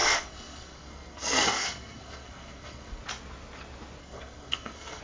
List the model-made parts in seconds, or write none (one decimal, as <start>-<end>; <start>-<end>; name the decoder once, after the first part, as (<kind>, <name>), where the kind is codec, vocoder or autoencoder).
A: 0.0-3.0 (codec, SNAC); 4.0-5.0